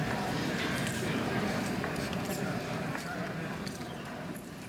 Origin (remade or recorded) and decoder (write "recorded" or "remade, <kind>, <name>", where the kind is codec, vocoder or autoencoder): remade, vocoder, BigVGAN v2